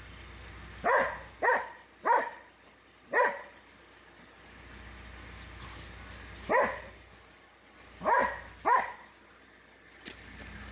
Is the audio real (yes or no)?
yes